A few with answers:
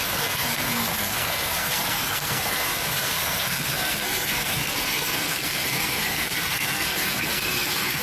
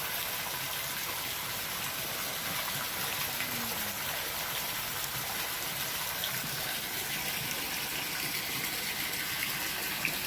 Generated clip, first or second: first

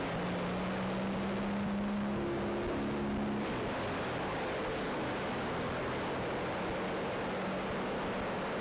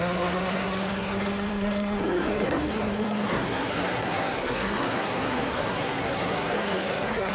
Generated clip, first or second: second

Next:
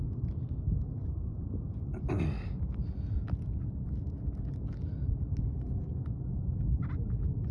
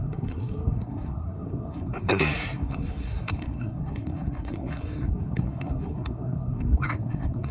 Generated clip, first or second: second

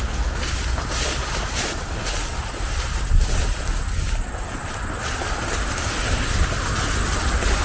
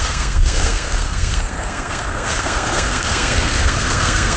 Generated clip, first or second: second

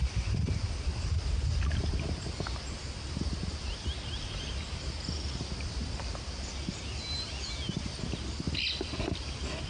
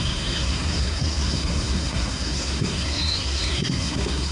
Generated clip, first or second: second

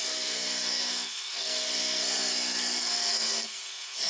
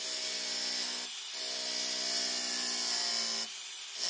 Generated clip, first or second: first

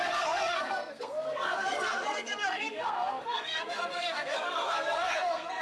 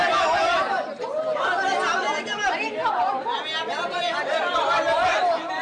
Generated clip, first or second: first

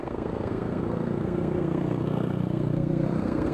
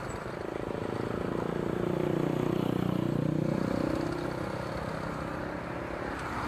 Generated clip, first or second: first